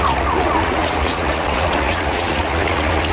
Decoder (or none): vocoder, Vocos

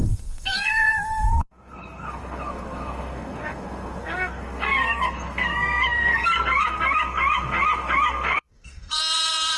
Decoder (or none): codec, SNAC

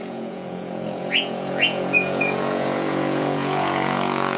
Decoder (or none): vocoder, Vocos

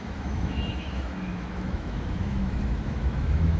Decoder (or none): autoencoder, DAC-VAE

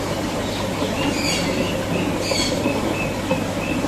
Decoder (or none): none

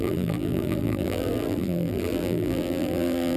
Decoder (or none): vocoder, BigVGAN v2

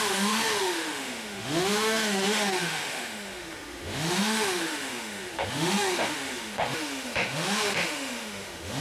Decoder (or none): autoencoder, DAC-VAE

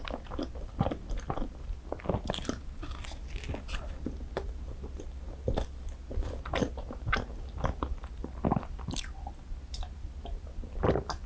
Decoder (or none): none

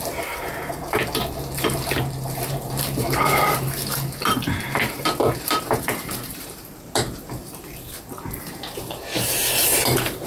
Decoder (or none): vocoder, BigVGAN v2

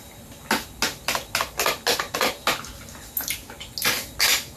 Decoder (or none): none